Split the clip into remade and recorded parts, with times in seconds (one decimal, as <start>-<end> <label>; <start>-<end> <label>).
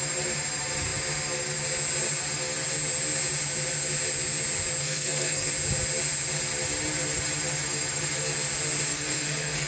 0.0-4.8 recorded; 4.8-5.5 remade; 5.5-8.9 recorded; 8.9-9.7 remade